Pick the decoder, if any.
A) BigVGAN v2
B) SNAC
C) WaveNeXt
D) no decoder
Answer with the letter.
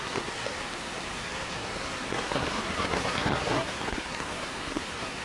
B